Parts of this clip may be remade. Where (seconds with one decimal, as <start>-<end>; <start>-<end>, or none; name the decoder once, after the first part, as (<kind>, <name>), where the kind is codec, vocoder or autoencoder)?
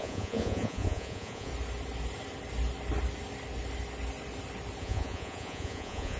0.0-1.5 (vocoder, Vocos); 4.8-6.2